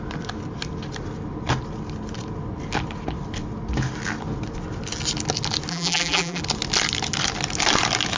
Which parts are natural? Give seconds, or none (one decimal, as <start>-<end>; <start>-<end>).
0.0-5.7; 6.4-8.2